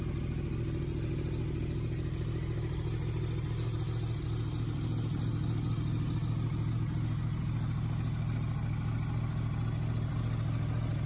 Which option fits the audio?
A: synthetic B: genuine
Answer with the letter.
B